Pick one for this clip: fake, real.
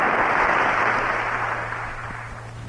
real